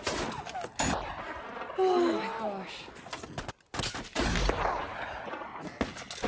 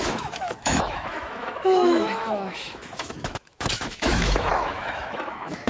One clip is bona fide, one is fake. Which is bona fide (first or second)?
first